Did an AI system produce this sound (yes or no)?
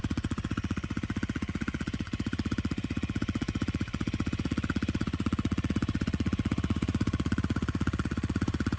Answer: yes